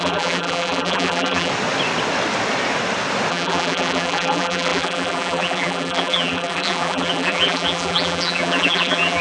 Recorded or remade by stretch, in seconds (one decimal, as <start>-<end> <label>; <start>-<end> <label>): 0.0-1.5 remade; 1.5-3.3 recorded; 3.3-9.2 remade

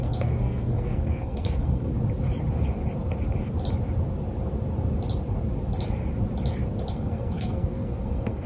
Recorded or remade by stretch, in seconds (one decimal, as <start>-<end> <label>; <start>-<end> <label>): 0.0-1.9 remade; 1.9-6.9 recorded; 6.9-8.5 remade

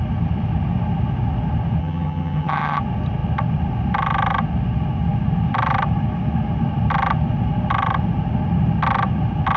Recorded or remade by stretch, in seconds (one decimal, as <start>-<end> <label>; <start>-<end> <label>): 0.0-1.8 recorded; 1.8-2.8 remade; 2.8-9.6 recorded

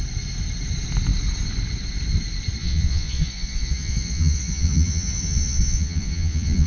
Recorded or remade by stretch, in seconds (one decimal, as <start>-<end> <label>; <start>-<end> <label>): 0.0-2.6 recorded; 2.6-6.7 remade

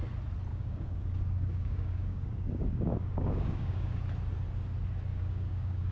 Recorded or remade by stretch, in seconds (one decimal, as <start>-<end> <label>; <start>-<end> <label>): 0.0-0.5 recorded; 0.5-4.0 remade; 4.0-5.1 recorded; 5.1-5.9 remade

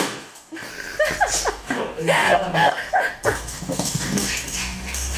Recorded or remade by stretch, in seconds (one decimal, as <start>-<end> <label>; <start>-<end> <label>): 0.0-0.7 remade; 0.7-1.5 recorded; 1.5-5.2 remade

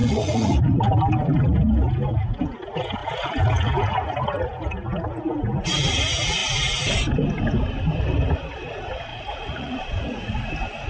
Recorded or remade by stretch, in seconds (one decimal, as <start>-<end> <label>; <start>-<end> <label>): 0.0-0.8 remade; 0.8-9.1 recorded; 9.1-10.5 remade; 10.5-10.9 recorded

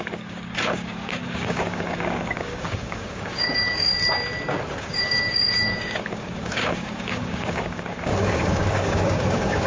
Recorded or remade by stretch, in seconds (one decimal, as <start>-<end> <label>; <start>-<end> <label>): 0.0-3.9 remade; 3.9-4.8 recorded; 4.8-9.7 remade